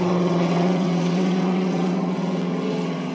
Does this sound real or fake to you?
fake